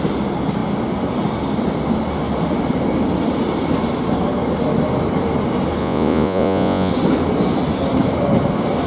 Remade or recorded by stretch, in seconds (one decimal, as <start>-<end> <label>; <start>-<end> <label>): 0.0-5.8 recorded; 5.8-6.9 remade; 6.9-8.9 recorded